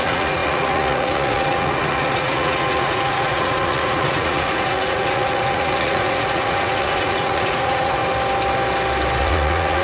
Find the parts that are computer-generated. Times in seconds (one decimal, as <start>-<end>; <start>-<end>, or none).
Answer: 0.0-8.0; 9.2-9.8